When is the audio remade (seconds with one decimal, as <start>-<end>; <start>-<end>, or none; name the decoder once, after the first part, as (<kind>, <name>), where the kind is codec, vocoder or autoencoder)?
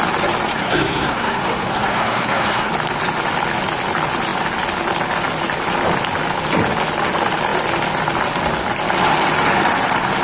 0.5-2.7 (codec, SNAC)